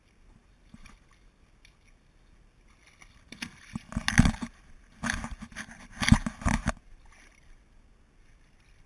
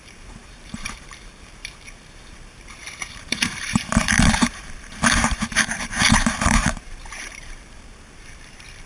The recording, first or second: first